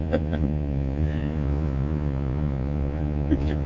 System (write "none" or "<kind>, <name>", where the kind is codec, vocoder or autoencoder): vocoder, Vocos